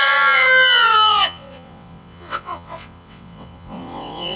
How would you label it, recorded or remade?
remade